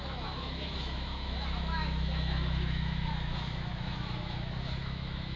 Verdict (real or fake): fake